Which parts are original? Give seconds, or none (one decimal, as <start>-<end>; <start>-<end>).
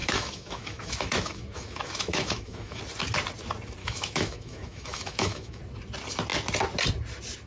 2.8-3.8; 5.6-7.5